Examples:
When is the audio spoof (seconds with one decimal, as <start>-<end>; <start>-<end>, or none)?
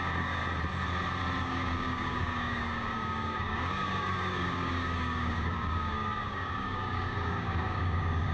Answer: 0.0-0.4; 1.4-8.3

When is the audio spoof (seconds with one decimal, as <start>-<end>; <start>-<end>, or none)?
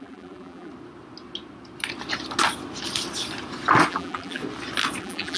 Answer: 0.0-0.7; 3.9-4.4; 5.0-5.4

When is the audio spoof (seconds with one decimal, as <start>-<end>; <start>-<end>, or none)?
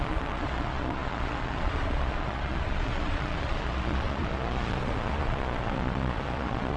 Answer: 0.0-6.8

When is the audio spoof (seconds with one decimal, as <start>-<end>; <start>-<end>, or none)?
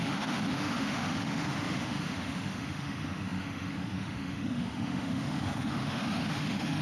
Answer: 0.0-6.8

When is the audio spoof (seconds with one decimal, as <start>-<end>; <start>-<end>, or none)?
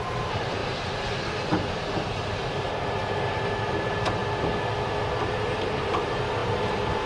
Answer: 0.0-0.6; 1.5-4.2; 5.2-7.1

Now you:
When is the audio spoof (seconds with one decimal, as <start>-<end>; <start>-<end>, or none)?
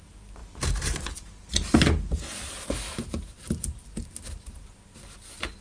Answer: none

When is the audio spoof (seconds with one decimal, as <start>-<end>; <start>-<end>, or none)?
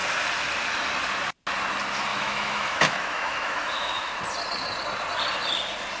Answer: 2.1-4.2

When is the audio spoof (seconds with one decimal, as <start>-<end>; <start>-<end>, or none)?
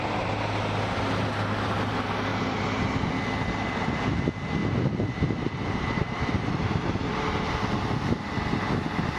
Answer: 2.3-3.1; 4.6-7.1